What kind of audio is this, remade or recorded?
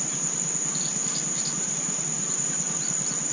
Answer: recorded